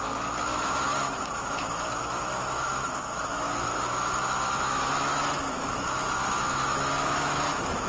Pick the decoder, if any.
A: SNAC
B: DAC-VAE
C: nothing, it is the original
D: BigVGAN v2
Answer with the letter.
B